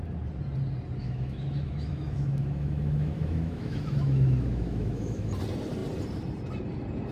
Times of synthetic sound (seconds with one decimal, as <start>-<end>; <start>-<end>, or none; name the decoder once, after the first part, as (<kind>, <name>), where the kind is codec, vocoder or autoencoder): 1.0-5.3 (autoencoder, DAC-VAE)